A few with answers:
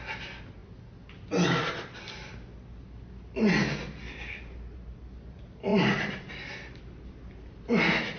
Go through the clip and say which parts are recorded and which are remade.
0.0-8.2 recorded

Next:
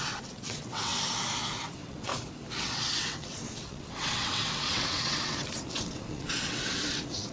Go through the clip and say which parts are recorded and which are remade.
0.0-0.9 remade; 0.9-1.6 recorded; 1.6-2.1 remade; 2.1-2.6 recorded; 2.6-7.3 remade

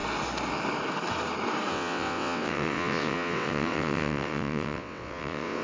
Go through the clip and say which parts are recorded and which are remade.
0.0-1.7 recorded; 1.7-5.6 remade

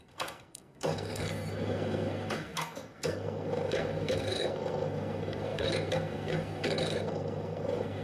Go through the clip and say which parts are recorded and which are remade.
0.0-8.0 remade